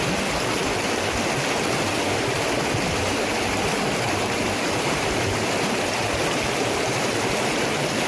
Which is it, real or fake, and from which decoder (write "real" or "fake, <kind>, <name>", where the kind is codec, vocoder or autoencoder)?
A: fake, vocoder, BigVGAN v2